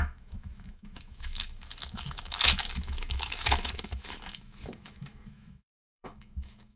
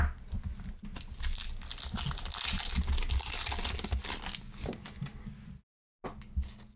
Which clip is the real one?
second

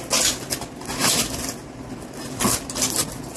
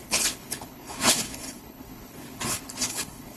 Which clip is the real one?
first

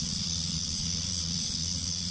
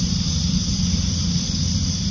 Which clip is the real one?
second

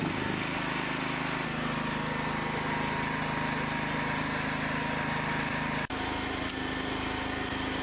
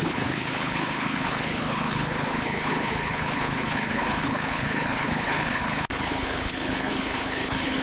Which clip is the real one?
first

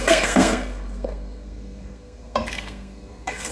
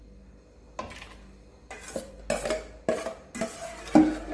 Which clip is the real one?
second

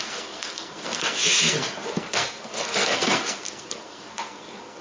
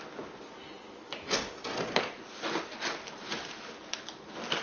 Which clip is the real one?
second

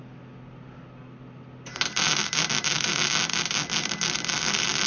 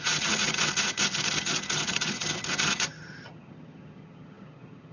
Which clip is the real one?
first